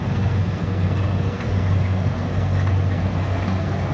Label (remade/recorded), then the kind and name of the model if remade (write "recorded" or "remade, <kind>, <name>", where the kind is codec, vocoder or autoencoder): remade, codec, SNAC